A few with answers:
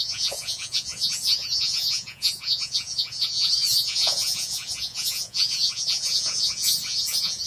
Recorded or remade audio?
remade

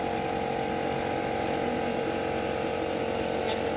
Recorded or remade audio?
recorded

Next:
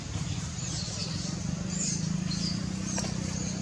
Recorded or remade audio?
remade